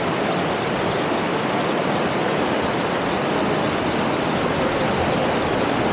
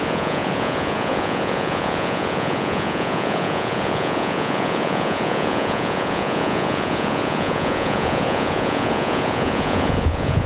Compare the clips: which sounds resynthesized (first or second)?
second